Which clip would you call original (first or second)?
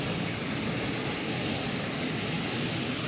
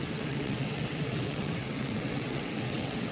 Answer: first